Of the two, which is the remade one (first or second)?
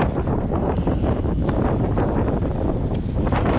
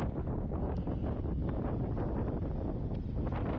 first